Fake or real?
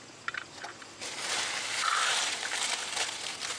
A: real